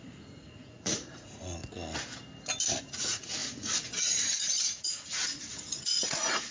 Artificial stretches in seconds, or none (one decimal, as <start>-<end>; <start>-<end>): 0.0-1.6; 2.8-6.5